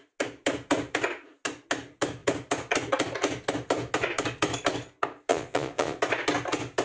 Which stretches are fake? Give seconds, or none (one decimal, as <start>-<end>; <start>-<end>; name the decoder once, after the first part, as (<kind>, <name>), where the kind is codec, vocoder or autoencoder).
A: 5.3-6.0 (vocoder, Vocos)